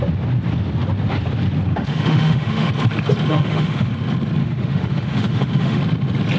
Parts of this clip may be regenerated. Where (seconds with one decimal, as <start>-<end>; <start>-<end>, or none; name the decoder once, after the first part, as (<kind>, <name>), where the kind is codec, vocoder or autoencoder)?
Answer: 1.7-2.7 (autoencoder, DAC-VAE); 3.3-3.9; 4.4-5.8